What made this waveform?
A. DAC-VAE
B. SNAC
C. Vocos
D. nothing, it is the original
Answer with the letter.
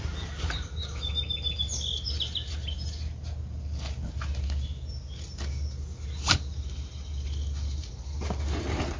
D